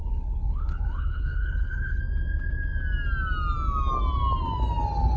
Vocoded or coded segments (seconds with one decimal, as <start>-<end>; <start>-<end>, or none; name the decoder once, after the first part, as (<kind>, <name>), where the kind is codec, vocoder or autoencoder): 0.0-2.0 (codec, HILCodec)